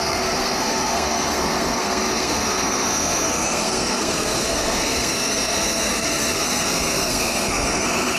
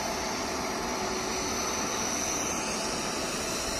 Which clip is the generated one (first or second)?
first